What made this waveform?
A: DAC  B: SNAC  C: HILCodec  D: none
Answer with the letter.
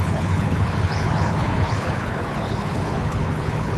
C